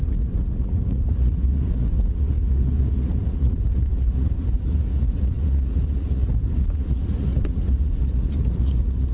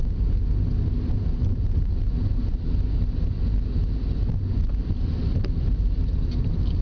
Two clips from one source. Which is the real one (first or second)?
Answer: second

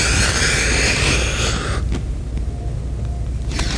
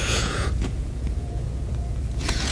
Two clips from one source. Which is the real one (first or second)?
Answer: first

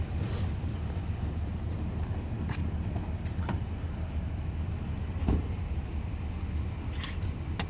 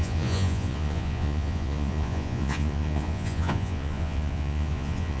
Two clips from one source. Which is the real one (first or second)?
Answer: first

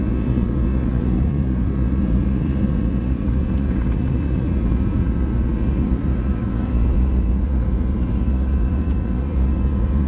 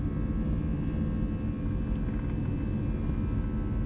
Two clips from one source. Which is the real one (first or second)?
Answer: second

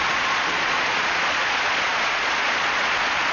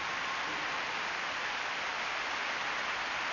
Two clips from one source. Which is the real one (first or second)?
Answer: second